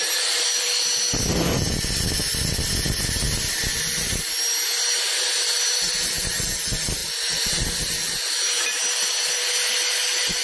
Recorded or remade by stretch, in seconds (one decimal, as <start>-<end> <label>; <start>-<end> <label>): 0.0-7.0 recorded; 7.0-7.6 remade; 7.6-10.4 recorded